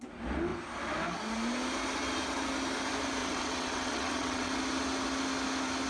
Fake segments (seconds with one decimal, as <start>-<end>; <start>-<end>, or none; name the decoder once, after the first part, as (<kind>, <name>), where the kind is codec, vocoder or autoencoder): 3.2-4.5 (vocoder, WaveNeXt)